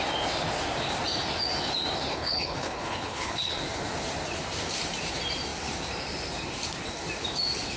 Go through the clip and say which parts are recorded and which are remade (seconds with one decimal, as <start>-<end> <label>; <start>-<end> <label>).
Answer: 0.0-2.1 recorded; 2.1-3.6 remade; 3.6-7.8 recorded